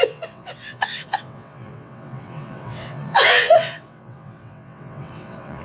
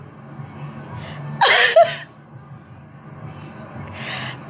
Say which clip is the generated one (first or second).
first